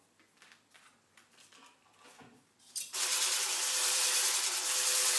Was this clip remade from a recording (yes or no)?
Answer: yes